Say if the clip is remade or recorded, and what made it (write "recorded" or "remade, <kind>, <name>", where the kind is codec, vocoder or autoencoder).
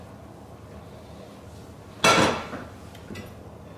recorded